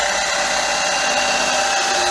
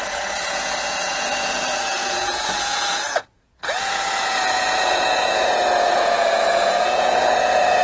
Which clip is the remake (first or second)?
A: second